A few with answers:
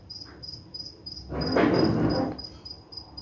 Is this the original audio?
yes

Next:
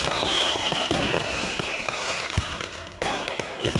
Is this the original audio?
no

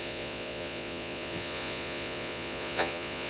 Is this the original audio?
no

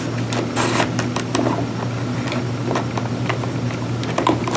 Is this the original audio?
yes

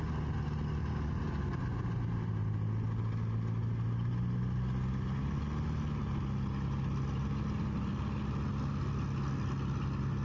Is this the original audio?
yes